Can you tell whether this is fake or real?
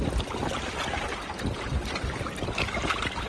real